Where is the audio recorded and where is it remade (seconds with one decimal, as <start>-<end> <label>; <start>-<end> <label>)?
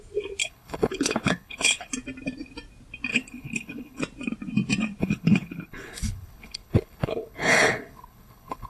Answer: 0.0-0.4 recorded; 0.4-1.9 remade; 1.9-3.1 recorded; 3.1-4.0 remade; 4.0-5.0 recorded; 5.0-8.7 remade